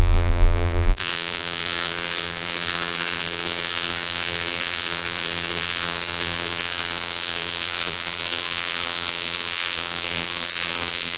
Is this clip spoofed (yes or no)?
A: yes